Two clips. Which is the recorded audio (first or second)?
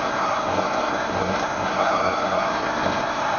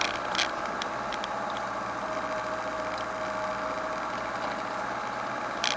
second